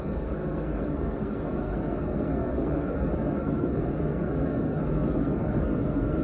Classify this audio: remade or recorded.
remade